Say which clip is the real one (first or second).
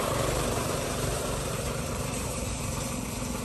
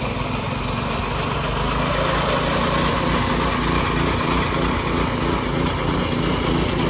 second